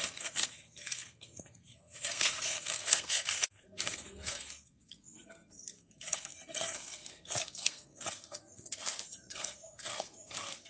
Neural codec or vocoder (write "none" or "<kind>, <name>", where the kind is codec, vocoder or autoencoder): codec, SNAC